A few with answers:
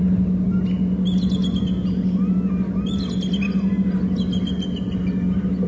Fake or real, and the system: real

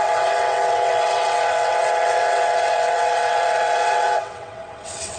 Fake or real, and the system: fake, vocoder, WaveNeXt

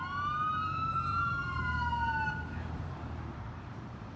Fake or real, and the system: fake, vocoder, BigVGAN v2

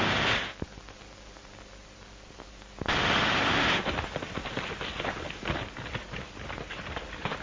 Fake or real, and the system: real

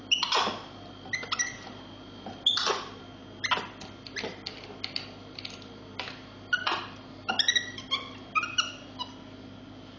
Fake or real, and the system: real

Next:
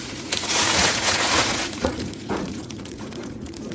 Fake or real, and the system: fake, vocoder, Vocos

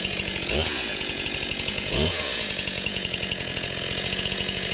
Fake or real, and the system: fake, vocoder, Vocos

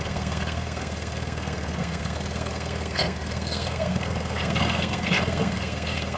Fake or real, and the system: fake, codec, SNAC